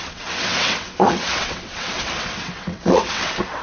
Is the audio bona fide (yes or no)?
no